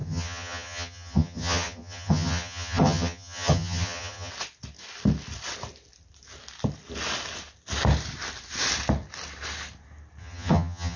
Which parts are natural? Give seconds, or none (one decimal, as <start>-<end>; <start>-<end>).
4.3-10.2